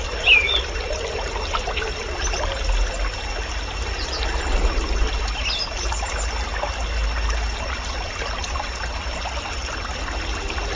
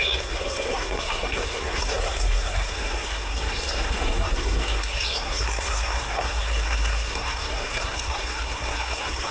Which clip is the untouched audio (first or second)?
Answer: first